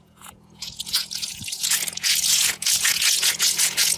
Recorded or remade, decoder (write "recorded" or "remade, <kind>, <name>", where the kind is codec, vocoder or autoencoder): remade, vocoder, Vocos